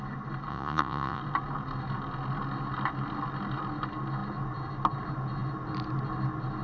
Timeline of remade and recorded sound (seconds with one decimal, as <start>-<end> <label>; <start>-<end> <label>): 0.0-0.5 recorded; 0.5-1.2 remade; 1.2-6.6 recorded